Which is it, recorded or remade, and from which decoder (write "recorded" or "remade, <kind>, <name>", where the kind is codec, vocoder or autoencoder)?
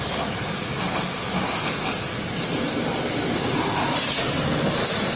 recorded